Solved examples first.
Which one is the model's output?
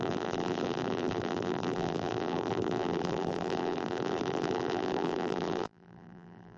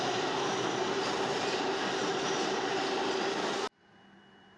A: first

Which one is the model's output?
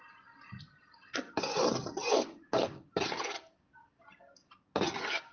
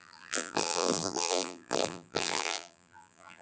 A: second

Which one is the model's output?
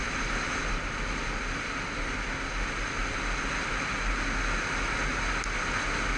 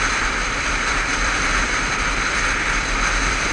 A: second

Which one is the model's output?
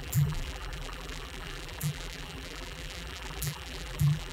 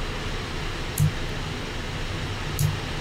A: first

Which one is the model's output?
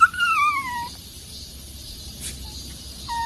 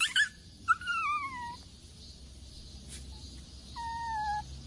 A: first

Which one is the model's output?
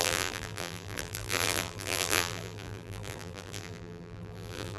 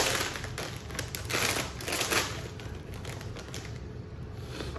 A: first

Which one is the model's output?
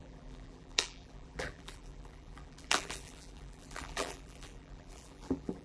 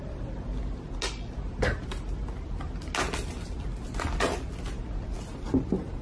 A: first